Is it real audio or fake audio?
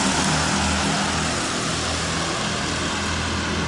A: real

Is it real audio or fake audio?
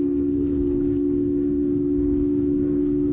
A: fake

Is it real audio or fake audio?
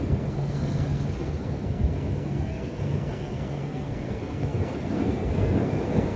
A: fake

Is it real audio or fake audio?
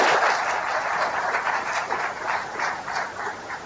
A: real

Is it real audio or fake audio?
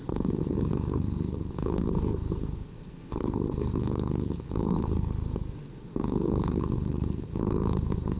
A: fake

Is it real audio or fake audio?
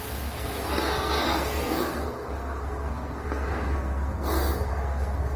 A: fake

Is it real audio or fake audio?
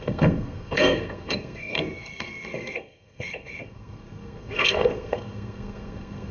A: fake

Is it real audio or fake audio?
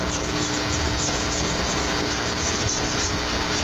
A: real